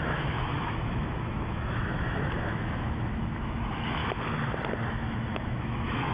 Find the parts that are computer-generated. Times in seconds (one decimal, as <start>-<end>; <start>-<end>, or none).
0.0-4.0; 4.9-6.1